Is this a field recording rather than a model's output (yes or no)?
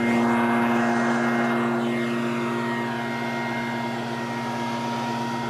yes